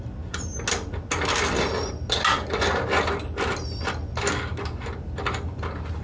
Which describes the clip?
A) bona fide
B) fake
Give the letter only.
A